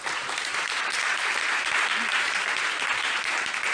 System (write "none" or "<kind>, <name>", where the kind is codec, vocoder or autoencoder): vocoder, BigVGAN v2